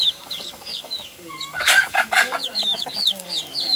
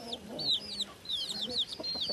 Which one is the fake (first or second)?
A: first